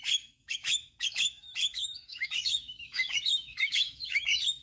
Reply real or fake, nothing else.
fake